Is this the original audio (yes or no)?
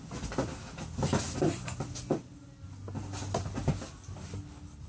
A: yes